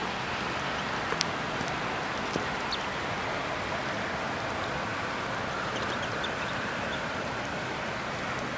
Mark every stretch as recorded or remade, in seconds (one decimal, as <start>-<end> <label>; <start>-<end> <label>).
0.0-4.9 recorded; 4.9-8.2 remade; 8.2-8.6 recorded